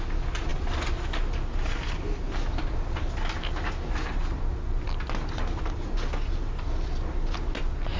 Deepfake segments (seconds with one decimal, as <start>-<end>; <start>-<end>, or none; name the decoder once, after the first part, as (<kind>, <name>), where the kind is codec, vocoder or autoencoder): none